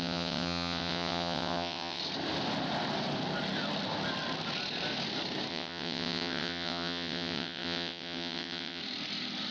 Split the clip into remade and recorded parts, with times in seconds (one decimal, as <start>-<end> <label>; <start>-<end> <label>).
0.0-2.0 remade; 2.0-5.5 recorded; 5.5-8.8 remade; 8.8-9.5 recorded

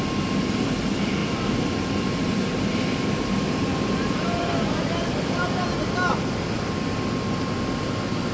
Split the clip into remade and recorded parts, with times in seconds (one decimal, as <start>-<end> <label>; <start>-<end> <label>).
0.0-1.2 recorded; 1.2-6.1 remade; 6.1-8.3 recorded

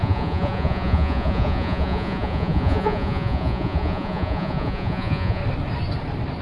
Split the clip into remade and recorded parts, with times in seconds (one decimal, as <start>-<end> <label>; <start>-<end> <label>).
0.0-5.4 remade; 5.4-6.4 recorded

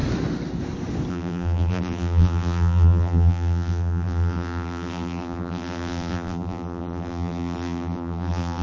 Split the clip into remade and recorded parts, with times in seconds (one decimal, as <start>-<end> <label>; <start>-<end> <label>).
0.0-1.1 recorded; 1.1-8.6 remade

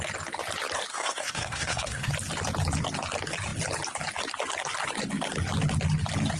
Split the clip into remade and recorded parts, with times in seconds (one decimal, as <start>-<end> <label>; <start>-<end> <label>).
0.0-0.9 recorded; 0.9-2.1 remade; 2.1-6.4 recorded